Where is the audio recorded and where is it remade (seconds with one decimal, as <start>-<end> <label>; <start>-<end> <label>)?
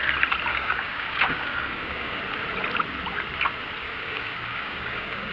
0.0-0.5 recorded; 0.5-2.2 remade; 2.2-3.8 recorded; 3.8-5.3 remade